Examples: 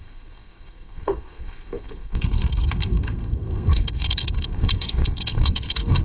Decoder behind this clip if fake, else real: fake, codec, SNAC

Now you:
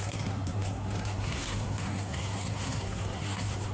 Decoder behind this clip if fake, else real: fake, codec, SNAC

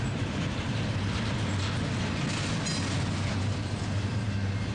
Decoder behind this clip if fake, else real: real